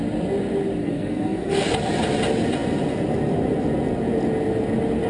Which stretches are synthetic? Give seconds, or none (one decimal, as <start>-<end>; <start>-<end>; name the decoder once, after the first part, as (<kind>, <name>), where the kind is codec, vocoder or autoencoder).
0.8-1.7 (codec, SNAC)